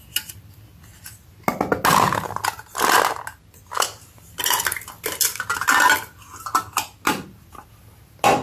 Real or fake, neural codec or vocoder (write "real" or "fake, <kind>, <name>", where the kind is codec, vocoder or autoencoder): real